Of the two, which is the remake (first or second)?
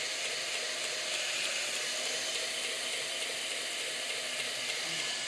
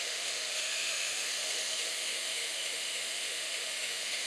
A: second